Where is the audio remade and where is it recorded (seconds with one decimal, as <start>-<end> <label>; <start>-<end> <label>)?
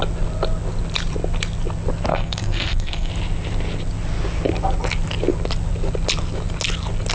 0.0-2.1 recorded; 2.1-3.1 remade; 3.1-7.1 recorded